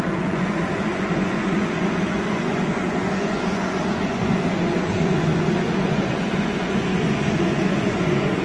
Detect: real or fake fake